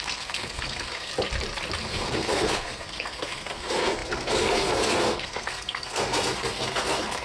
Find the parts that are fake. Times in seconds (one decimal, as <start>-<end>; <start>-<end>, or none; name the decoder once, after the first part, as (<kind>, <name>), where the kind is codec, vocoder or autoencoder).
0.0-1.1 (codec, SNAC); 1.8-7.2